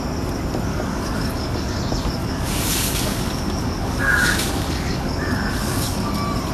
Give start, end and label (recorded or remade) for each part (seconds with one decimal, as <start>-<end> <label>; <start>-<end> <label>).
0.0-0.7 recorded; 0.7-1.8 remade; 1.8-2.2 recorded; 2.2-6.1 remade; 6.1-6.5 recorded